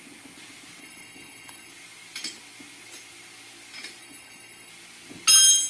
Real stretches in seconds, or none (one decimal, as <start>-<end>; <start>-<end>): 0.0-0.8; 1.7-4.0; 4.7-5.7